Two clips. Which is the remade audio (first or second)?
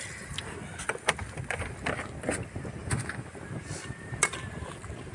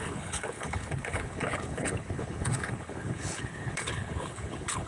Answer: second